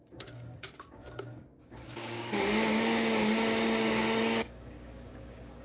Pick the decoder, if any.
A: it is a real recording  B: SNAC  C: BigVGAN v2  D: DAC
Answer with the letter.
D